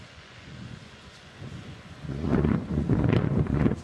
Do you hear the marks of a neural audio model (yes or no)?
yes